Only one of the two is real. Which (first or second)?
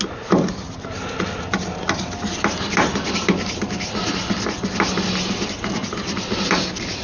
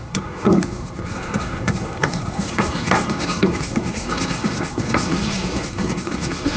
first